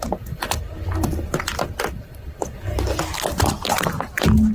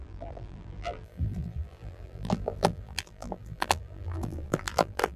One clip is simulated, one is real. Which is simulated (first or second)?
second